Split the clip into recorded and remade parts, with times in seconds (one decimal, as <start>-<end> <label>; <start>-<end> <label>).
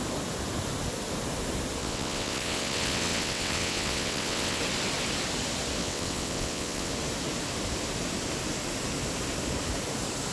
0.0-1.8 recorded; 1.8-4.6 remade; 4.6-5.8 recorded; 5.8-6.9 remade; 6.9-10.3 recorded